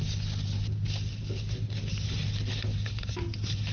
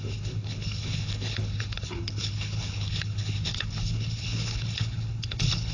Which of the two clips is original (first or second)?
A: first